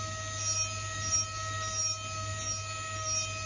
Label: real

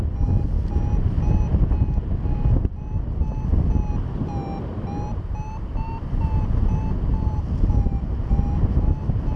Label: real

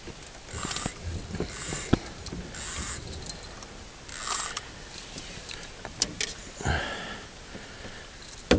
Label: real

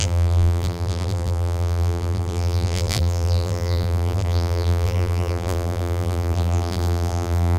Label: fake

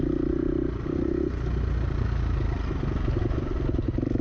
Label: real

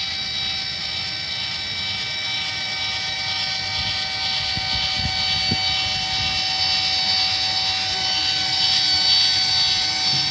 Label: real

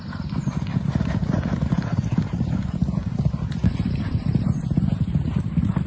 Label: fake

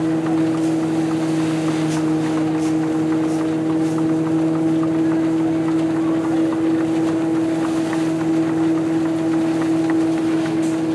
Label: real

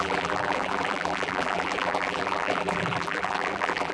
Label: fake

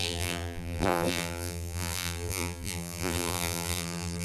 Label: fake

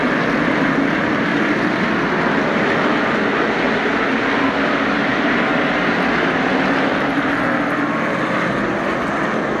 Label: real